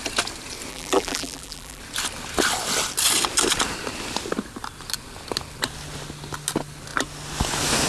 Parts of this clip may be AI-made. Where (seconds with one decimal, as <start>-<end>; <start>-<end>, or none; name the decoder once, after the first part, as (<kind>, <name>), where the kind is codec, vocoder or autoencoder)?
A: 0.7-1.8 (vocoder, BigVGAN v2)